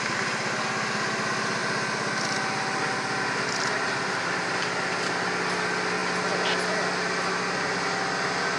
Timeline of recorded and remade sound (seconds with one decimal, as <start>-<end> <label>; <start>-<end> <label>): 0.0-8.6 recorded